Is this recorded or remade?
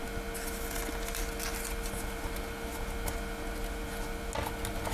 recorded